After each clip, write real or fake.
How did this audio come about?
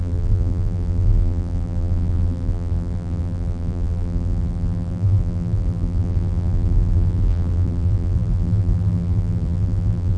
fake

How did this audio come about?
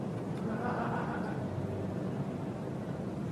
real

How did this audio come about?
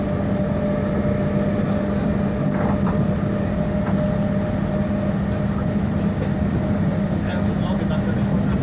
real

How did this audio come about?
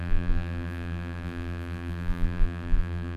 fake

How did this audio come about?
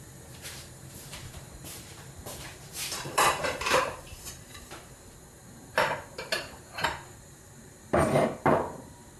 fake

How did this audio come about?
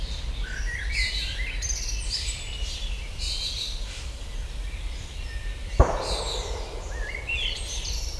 fake